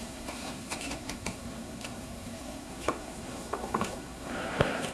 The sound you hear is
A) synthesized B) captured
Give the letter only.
A